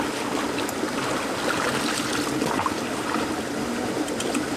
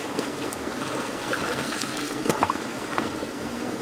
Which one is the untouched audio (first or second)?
first